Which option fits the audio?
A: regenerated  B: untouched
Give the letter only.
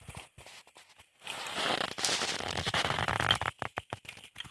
B